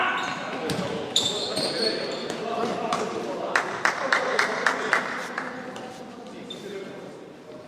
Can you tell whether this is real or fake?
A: fake